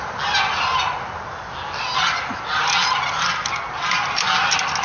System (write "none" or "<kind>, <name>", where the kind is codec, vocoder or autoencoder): none